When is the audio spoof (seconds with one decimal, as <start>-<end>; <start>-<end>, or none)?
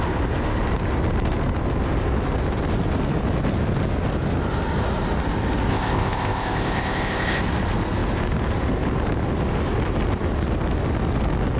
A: 5.7-7.4